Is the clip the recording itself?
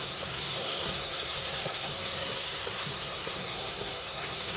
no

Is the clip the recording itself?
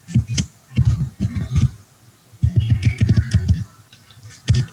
yes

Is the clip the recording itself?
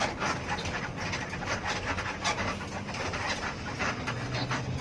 yes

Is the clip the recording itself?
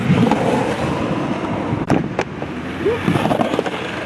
yes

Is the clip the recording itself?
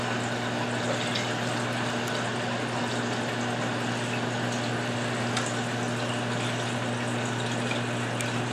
yes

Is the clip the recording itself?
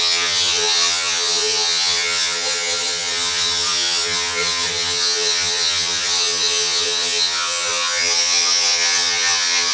no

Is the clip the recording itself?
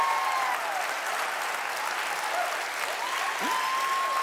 yes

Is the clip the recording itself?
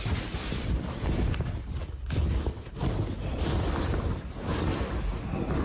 yes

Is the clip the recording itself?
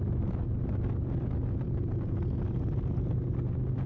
yes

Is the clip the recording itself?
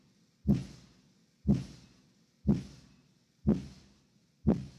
yes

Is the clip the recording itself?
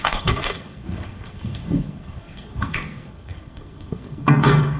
no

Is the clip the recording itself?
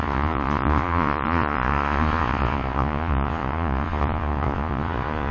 no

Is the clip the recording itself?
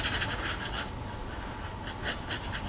yes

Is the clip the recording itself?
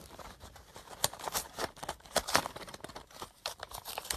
no